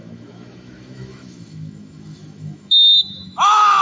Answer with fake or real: fake